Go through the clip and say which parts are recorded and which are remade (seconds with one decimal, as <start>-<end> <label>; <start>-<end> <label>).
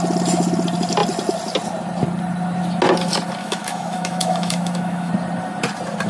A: 0.0-3.4 recorded; 3.4-5.1 remade; 5.1-6.1 recorded